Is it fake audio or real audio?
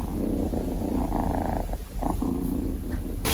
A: real